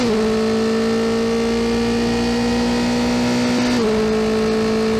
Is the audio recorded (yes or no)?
yes